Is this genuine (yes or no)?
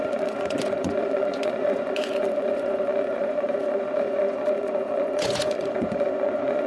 no